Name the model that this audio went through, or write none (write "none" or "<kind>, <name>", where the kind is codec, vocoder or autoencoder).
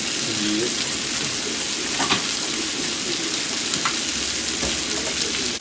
none